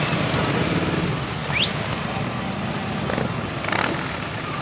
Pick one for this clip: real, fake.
real